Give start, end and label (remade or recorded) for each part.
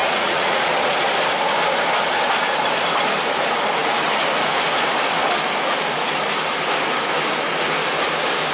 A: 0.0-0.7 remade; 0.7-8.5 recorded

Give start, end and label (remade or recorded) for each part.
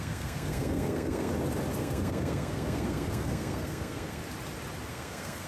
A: 0.0-1.3 remade; 1.3-1.8 recorded; 1.8-4.2 remade; 4.2-4.9 recorded; 4.9-5.5 remade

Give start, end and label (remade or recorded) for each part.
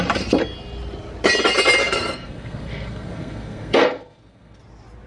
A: 0.0-1.8 recorded; 1.8-4.6 remade; 4.6-5.1 recorded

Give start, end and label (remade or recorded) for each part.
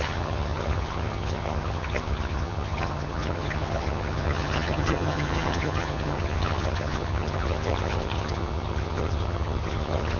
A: 0.0-10.2 remade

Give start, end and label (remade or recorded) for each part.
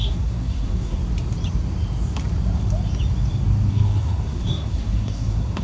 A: 0.0-1.0 remade; 1.0-3.7 recorded; 3.7-5.6 remade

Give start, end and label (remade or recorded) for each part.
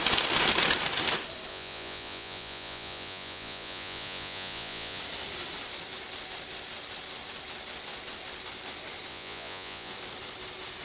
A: 0.0-1.5 recorded; 1.5-5.0 remade; 5.0-9.1 recorded; 9.1-9.9 remade; 9.9-10.8 recorded